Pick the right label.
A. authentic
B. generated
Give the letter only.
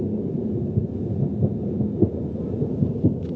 A